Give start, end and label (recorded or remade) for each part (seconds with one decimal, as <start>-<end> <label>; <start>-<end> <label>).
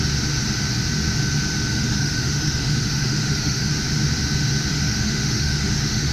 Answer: 0.0-1.7 recorded; 1.7-3.7 remade; 3.7-4.7 recorded; 4.7-6.1 remade